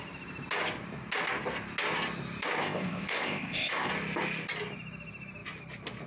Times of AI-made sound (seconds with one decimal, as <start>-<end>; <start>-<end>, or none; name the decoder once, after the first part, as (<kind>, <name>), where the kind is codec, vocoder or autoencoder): 2.6-3.9 (codec, ZipCodec)